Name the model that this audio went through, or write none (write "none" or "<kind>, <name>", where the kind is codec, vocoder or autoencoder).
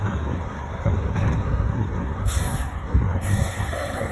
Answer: codec, SNAC